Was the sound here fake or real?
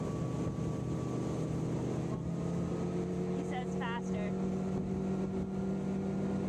real